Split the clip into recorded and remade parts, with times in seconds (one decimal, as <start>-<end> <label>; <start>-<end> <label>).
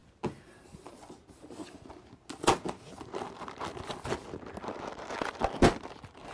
0.0-6.3 recorded